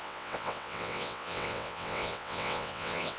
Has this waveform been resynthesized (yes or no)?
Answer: yes